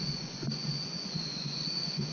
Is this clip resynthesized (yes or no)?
yes